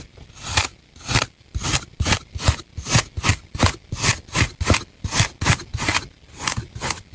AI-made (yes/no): no